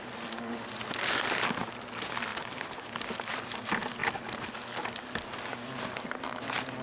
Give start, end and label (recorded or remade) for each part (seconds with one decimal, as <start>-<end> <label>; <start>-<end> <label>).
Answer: 0.0-4.0 recorded; 4.0-4.5 remade; 4.5-6.8 recorded